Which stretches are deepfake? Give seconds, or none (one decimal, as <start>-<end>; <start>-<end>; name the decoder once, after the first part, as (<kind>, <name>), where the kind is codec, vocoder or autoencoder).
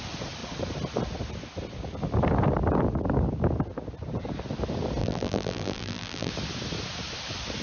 5.0-6.3 (vocoder, BigVGAN v2)